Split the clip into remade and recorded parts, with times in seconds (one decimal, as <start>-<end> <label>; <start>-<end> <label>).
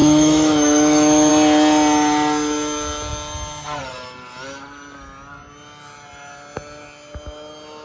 0.0-1.3 remade; 1.3-7.8 recorded